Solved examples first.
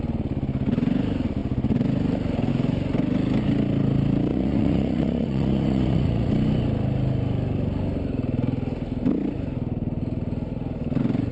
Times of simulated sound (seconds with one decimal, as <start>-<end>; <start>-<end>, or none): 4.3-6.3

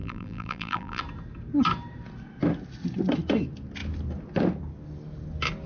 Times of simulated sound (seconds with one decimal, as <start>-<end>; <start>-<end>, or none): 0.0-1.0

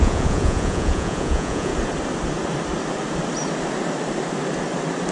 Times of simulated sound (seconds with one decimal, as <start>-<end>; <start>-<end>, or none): 0.0-1.7

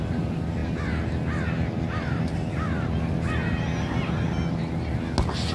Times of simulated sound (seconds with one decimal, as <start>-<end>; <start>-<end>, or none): none